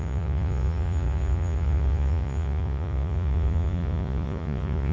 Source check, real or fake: fake